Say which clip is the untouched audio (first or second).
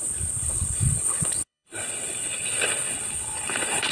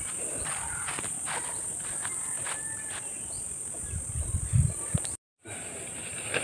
second